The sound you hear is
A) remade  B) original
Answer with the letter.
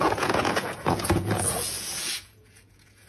A